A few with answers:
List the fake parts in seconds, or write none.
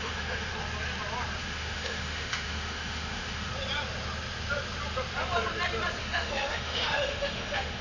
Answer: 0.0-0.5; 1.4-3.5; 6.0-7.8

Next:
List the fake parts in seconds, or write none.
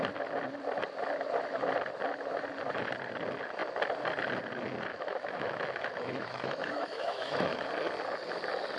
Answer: 4.9-7.7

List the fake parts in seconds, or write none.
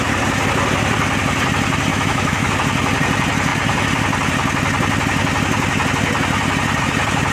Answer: 1.9-2.5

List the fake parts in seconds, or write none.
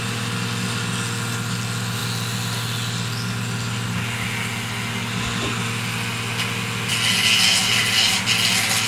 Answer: none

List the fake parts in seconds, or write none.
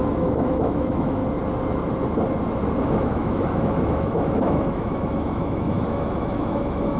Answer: 0.0-1.2; 2.8-7.0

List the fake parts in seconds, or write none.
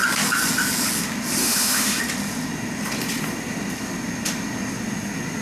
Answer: 1.4-2.0